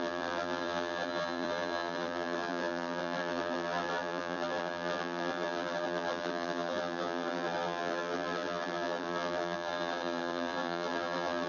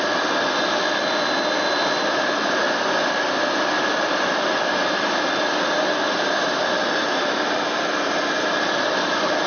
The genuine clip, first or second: second